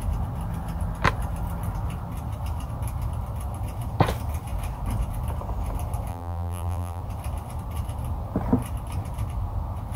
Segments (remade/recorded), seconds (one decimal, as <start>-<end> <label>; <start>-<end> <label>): 0.0-6.1 recorded; 6.1-7.0 remade; 7.0-10.0 recorded